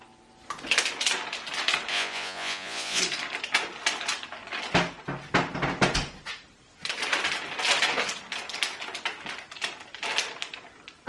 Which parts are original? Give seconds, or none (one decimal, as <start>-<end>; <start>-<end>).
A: 0.0-1.9; 3.0-11.1